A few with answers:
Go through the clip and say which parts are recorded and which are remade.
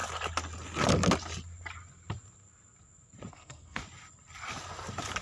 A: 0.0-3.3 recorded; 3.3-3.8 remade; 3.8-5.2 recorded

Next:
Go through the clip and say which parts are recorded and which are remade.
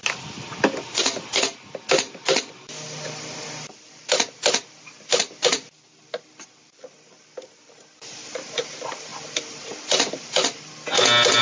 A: 0.0-11.4 recorded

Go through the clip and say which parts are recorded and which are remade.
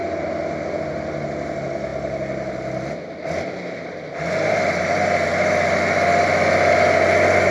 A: 0.0-7.5 recorded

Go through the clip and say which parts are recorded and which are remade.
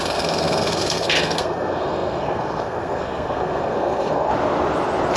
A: 0.0-4.3 remade; 4.3-5.2 recorded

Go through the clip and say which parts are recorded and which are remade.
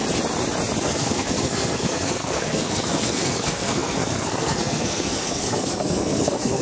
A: 0.0-0.8 recorded; 0.8-6.6 remade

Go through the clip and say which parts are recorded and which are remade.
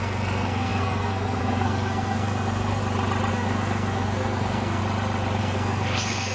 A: 0.0-2.8 remade; 2.8-3.3 recorded; 3.3-4.8 remade; 4.8-5.4 recorded; 5.4-6.3 remade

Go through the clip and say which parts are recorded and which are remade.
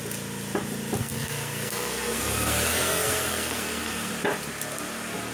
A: 0.0-1.0 recorded; 1.0-4.1 remade; 4.1-5.3 recorded